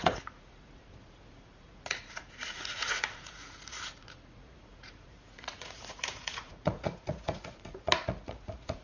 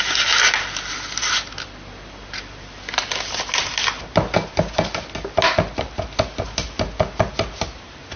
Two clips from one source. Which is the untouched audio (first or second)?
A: second